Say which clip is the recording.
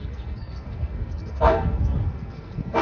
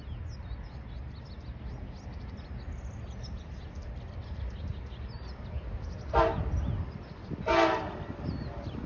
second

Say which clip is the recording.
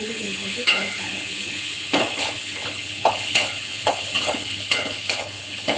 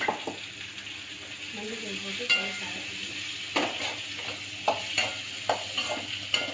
second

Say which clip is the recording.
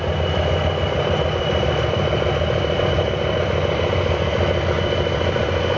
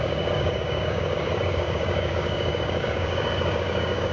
first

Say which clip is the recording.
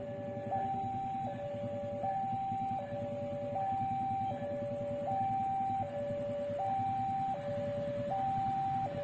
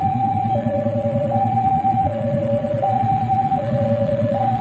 first